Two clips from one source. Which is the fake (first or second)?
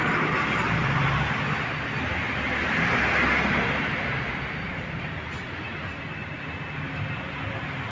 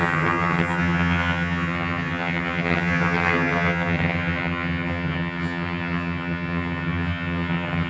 second